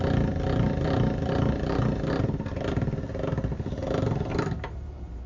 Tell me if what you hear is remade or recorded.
recorded